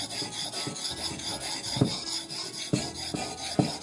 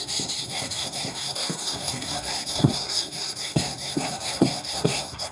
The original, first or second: first